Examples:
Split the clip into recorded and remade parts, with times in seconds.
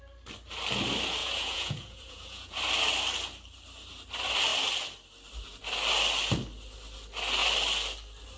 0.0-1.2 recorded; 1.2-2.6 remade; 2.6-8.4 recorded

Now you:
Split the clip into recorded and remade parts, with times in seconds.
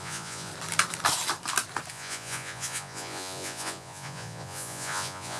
0.0-0.5 remade; 0.5-1.9 recorded; 1.9-5.4 remade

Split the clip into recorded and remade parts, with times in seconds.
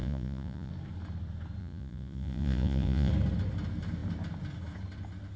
0.0-0.7 remade; 0.7-1.6 recorded; 1.6-3.1 remade; 3.1-5.4 recorded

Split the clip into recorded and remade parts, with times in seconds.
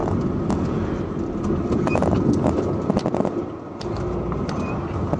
0.0-5.2 recorded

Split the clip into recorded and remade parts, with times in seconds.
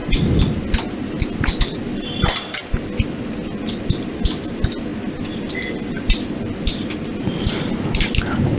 0.0-8.6 recorded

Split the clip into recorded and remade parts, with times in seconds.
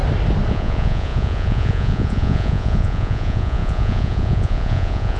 0.0-0.5 recorded; 0.5-5.2 remade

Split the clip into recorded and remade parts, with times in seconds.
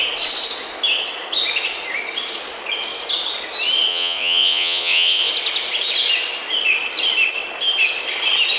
0.0-3.9 recorded; 3.9-5.3 remade; 5.3-8.6 recorded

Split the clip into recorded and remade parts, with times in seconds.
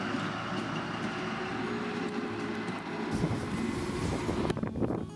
0.0-5.2 recorded